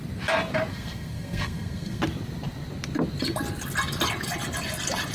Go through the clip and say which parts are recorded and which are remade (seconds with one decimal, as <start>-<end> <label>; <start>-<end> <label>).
0.0-0.7 recorded; 0.7-2.0 remade; 2.0-5.1 recorded